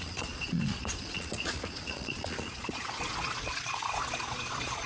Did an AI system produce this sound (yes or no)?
yes